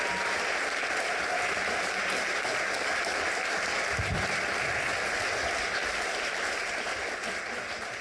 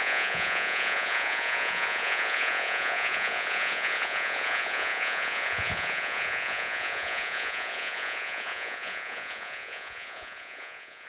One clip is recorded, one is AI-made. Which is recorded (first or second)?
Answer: first